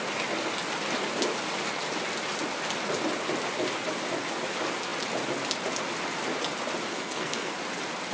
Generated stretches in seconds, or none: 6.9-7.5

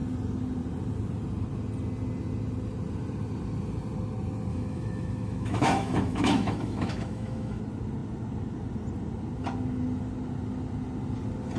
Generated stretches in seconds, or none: 4.5-7.6

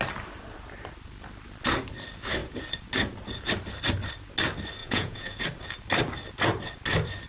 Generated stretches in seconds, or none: 4.8-5.4